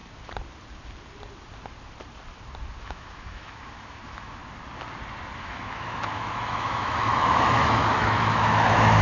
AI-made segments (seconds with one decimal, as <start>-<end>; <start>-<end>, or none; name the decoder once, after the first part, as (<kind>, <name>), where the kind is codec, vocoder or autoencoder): 2.8-4.4 (autoencoder, DAC-VAE); 5.4-9.0